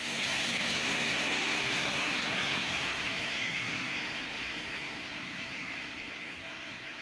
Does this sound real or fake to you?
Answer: fake